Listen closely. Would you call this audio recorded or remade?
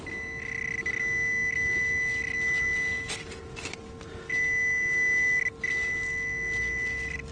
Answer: recorded